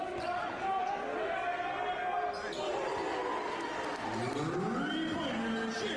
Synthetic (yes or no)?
no